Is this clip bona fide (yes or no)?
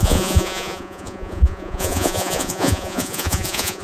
no